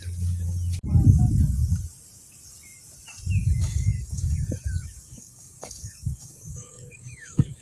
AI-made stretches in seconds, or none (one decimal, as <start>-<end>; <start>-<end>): 3.6-7.6